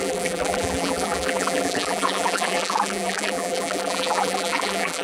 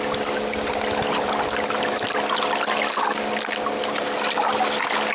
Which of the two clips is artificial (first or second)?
first